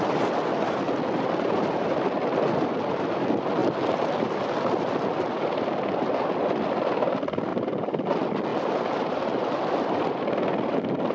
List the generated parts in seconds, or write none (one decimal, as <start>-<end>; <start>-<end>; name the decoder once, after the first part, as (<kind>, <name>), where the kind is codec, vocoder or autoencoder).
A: 7.5-8.0 (vocoder, BigVGAN v2)